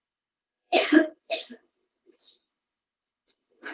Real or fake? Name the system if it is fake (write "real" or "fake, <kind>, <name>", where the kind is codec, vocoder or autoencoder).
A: fake, codec, HILCodec